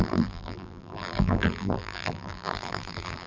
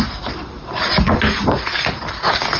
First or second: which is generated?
first